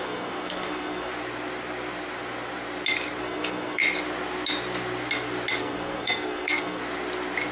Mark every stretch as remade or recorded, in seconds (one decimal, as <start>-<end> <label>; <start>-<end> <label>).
0.0-1.1 remade; 1.1-3.2 recorded; 3.2-3.8 remade; 3.8-5.6 recorded; 5.6-6.8 remade; 6.8-7.5 recorded